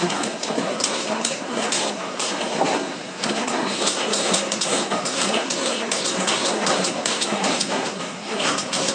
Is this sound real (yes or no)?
no